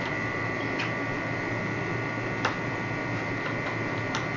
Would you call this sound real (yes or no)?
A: no